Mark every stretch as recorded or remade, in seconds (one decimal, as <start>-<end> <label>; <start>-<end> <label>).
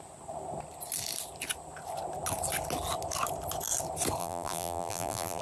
0.0-4.2 recorded; 4.2-5.4 remade